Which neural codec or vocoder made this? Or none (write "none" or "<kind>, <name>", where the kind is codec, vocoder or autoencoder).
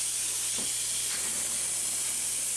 vocoder, BigVGAN v2